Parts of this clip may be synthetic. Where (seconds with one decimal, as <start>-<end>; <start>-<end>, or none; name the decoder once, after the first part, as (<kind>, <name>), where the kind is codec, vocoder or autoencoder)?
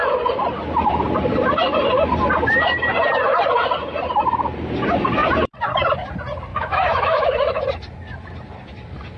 6.5-7.6 (autoencoder, DAC-VAE)